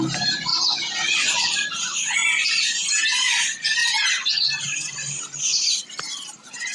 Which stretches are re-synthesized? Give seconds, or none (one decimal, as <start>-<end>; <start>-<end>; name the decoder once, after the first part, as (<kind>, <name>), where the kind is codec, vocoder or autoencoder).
0.0-0.5 (vocoder, BigVGAN v2); 1.2-2.2; 3.3-6.7